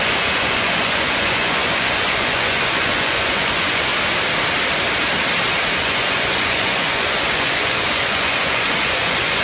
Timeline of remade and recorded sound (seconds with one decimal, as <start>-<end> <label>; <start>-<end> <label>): 0.0-3.9 remade; 3.9-5.8 recorded; 5.8-9.4 remade